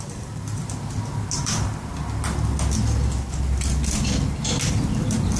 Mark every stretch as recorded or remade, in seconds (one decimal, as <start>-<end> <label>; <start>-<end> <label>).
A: 0.0-0.6 remade; 0.6-1.4 recorded; 1.4-1.9 remade; 1.9-5.4 recorded